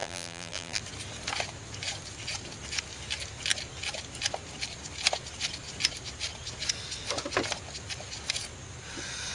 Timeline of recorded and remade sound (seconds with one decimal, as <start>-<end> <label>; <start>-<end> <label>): 0.0-0.8 remade; 0.8-9.3 recorded